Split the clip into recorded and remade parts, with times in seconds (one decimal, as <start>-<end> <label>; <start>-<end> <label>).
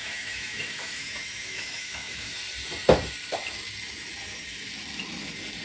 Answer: 0.0-2.4 remade; 2.4-5.6 recorded